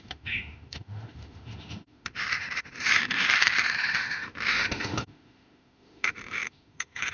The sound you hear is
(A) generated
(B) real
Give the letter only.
A